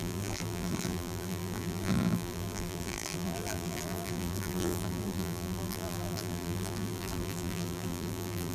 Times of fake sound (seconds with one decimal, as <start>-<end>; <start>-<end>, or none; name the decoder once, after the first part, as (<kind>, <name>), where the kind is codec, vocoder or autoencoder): 0.0-8.5 (vocoder, BigVGAN v2)

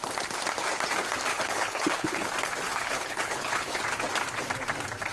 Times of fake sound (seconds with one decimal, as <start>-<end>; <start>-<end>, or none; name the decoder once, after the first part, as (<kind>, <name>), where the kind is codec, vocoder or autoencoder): 1.3-2.3 (codec, HILCodec); 2.7-3.8

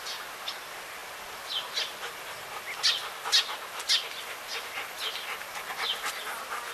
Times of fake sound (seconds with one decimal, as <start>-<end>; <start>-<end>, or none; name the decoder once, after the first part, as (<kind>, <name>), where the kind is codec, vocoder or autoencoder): none

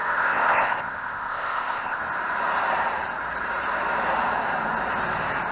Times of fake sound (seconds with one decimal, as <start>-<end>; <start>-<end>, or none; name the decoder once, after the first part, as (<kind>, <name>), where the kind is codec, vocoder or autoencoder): 0.0-2.0 (codec, ZipCodec)

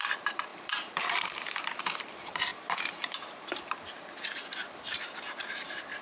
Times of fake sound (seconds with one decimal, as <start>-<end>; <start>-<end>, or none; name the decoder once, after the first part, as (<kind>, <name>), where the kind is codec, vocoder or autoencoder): 0.0-6.0 (vocoder, BigVGAN v2)